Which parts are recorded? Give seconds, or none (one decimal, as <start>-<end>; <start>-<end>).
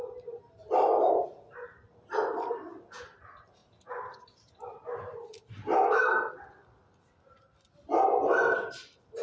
0.0-9.2